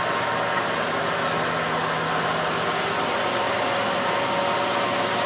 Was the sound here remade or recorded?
recorded